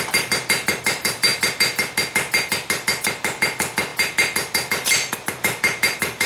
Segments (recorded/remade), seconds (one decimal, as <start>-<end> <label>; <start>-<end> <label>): 0.0-1.3 remade; 1.3-3.1 recorded; 3.1-3.9 remade; 3.9-4.7 recorded; 4.7-6.3 remade